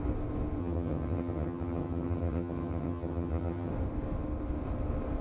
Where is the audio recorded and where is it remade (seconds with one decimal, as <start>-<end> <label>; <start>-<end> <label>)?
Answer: 0.0-0.6 recorded; 0.6-3.7 remade; 3.7-5.2 recorded